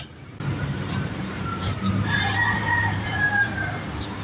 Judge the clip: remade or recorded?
remade